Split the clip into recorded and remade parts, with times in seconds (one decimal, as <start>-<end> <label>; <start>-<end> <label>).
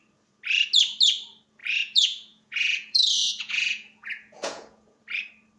0.0-1.6 recorded; 1.6-5.0 remade; 5.0-5.6 recorded